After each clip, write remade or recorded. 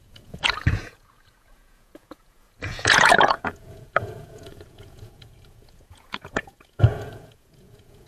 remade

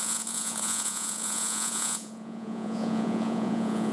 remade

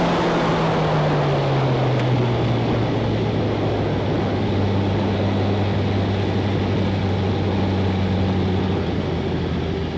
recorded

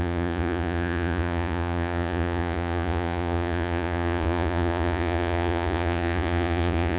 remade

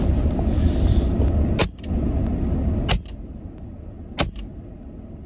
recorded